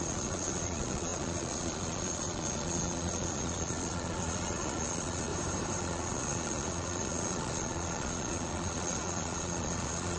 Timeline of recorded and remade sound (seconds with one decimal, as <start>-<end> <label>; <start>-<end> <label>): 0.0-5.3 remade; 5.3-5.8 recorded; 5.8-10.2 remade